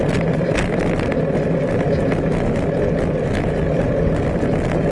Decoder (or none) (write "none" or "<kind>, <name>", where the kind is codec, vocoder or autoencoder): none